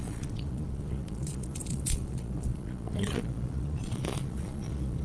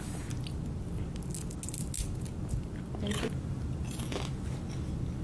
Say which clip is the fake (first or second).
first